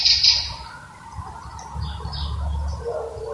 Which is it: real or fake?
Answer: real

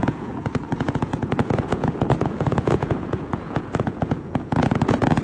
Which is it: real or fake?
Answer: fake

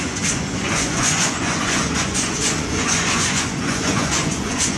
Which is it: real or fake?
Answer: fake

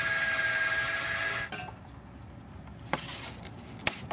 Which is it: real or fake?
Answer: real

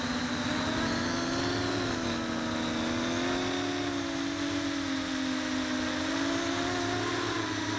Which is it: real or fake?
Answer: real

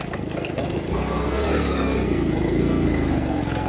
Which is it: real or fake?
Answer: fake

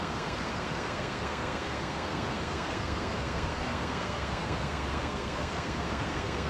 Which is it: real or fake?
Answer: fake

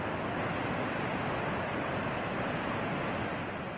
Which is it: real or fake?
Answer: real